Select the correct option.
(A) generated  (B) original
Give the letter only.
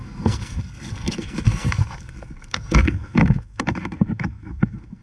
A